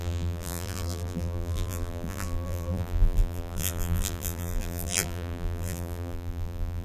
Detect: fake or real fake